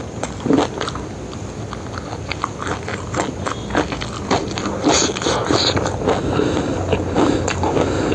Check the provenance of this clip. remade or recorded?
recorded